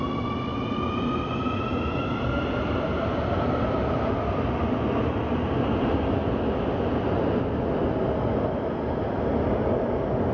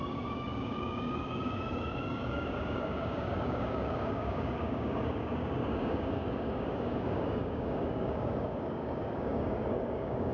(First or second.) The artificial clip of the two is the second